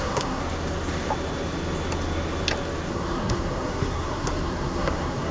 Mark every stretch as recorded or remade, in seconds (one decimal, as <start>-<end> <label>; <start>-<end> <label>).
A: 0.0-0.4 remade; 0.4-2.9 recorded; 2.9-5.3 remade